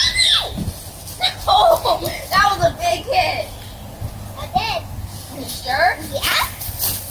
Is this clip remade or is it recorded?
recorded